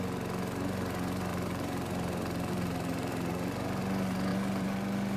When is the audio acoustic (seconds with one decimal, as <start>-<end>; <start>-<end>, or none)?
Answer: 0.0-1.3; 3.8-4.3